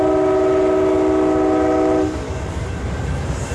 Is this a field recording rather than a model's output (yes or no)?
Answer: yes